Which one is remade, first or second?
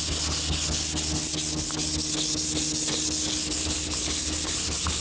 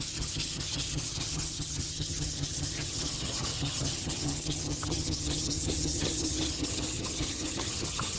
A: second